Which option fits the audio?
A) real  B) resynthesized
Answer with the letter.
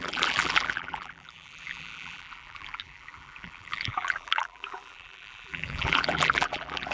B